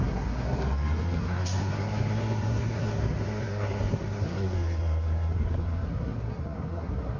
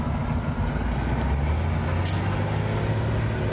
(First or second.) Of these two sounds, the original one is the second